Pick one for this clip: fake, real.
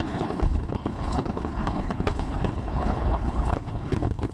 fake